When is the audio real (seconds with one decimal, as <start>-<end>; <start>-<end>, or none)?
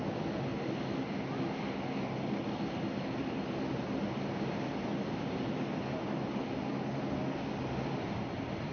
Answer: 0.0-8.7